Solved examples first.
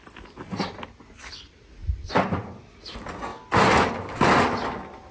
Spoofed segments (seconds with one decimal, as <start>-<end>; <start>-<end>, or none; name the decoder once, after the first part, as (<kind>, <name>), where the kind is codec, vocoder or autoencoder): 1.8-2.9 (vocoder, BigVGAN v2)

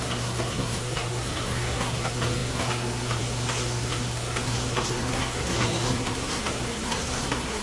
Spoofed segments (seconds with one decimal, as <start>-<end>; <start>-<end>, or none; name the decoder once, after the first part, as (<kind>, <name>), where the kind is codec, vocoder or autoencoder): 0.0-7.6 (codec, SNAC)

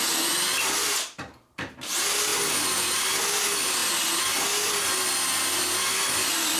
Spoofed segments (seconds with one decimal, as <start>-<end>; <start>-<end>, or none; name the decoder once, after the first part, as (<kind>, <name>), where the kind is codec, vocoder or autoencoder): none

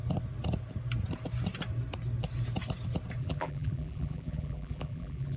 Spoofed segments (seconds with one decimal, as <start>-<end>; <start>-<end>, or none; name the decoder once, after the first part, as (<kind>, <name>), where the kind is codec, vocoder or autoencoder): 3.2-5.4 (vocoder, BigVGAN v2)

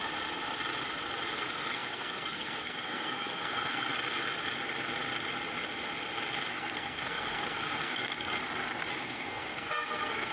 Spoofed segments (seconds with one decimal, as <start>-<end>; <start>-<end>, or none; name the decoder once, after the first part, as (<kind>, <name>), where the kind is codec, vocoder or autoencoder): 1.3-3.9 (codec, SNAC); 6.5-8.4; 8.9-10.3